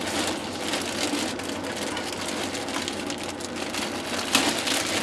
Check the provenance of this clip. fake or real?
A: real